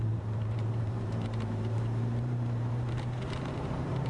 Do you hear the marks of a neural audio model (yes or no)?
yes